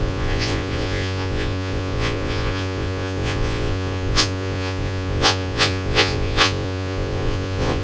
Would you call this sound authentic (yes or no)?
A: no